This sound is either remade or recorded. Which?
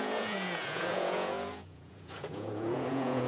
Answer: remade